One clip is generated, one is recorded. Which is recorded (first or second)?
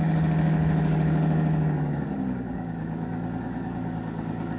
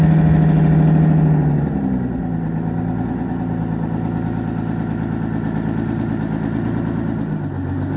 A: second